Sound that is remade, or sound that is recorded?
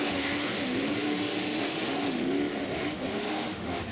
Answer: remade